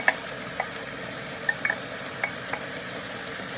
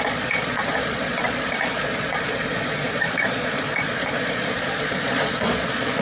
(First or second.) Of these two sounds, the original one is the first